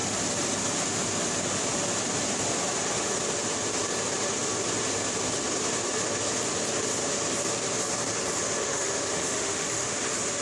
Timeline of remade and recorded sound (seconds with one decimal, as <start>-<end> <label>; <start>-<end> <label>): 0.0-8.6 recorded; 8.6-9.9 remade; 9.9-10.4 recorded

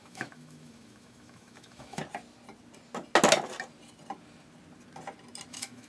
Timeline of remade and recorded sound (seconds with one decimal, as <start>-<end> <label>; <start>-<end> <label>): 0.0-2.0 remade; 2.0-5.5 recorded; 5.5-5.9 remade

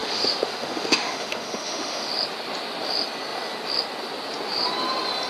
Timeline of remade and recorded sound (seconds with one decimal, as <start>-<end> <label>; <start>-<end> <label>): 0.0-2.1 remade; 2.1-5.3 recorded

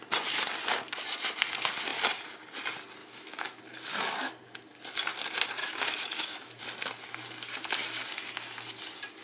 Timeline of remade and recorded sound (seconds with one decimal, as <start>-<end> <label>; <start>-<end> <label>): 0.0-3.0 recorded; 3.0-3.6 remade; 3.6-5.6 recorded; 5.6-6.6 remade; 6.6-9.2 recorded

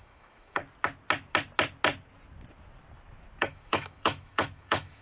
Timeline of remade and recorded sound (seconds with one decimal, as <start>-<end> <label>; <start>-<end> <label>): 0.0-0.6 remade; 0.6-3.4 recorded; 3.4-5.0 remade

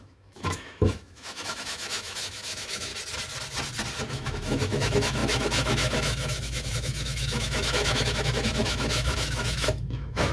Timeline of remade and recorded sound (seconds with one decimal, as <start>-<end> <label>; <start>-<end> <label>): 0.0-2.9 remade; 2.9-4.1 recorded; 4.1-10.3 remade

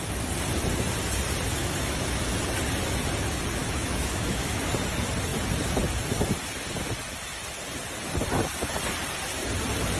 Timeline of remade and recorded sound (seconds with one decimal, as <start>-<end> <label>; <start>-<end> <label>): 0.0-1.6 recorded; 1.6-2.4 remade; 2.4-3.6 recorded; 3.6-4.6 remade; 4.6-10.0 recorded